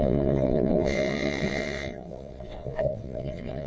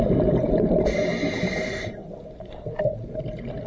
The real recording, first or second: second